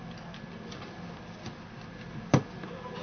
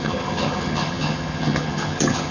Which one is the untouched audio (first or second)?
first